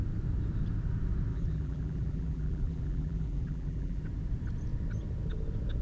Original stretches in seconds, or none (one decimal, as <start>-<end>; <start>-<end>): 0.0-1.3; 4.0-5.8